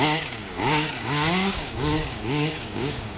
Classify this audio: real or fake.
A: fake